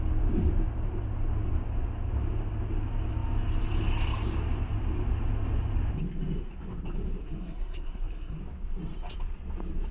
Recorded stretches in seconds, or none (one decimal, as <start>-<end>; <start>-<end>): 0.0-7.2; 8.4-9.9